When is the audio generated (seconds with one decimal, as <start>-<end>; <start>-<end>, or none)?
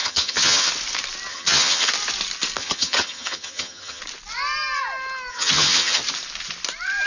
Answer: 0.0-0.7; 1.3-1.9; 2.6-4.0; 5.3-6.0